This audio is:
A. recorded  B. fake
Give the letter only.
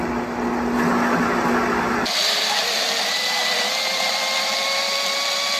A